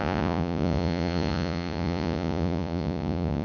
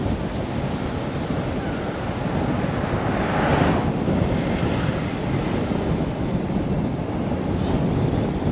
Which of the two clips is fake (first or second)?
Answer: first